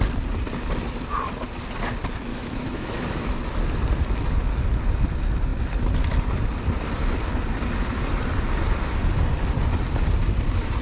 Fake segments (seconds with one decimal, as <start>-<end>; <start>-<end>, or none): 2.3-3.3